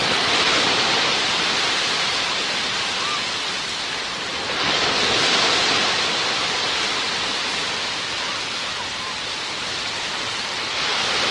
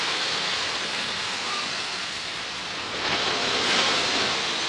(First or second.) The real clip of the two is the first